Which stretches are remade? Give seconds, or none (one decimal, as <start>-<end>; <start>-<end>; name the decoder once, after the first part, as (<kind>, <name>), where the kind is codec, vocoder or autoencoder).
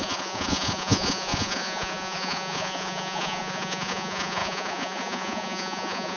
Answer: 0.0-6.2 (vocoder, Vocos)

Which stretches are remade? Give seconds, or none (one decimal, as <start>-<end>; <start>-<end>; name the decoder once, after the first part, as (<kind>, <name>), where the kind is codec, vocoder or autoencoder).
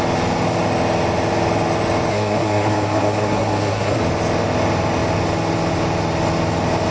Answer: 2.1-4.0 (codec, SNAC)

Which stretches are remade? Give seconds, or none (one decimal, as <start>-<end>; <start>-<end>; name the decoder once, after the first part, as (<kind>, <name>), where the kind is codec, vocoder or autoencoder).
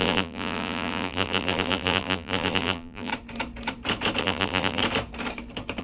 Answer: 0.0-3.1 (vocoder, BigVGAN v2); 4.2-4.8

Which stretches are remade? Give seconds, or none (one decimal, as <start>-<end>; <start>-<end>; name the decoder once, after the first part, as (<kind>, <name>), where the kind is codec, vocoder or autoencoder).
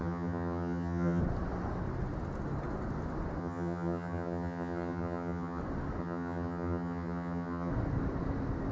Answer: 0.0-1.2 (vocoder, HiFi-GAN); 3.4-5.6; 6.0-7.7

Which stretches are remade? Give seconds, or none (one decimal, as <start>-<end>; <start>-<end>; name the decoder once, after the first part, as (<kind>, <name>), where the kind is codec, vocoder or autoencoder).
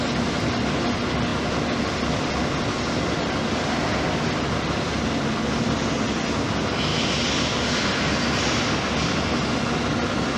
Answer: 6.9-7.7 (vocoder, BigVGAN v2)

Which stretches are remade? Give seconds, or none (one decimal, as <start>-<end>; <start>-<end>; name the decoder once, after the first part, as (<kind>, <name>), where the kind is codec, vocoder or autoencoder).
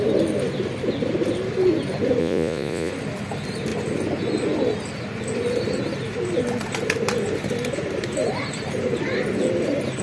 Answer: 2.2-2.9 (vocoder, Vocos)